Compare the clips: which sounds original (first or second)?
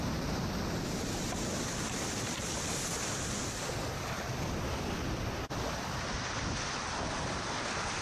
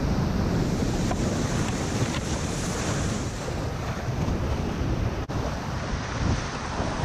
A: first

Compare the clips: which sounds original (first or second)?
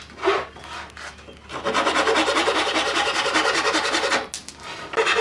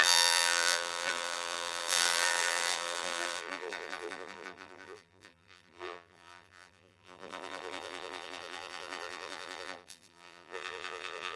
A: first